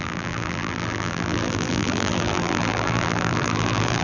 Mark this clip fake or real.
fake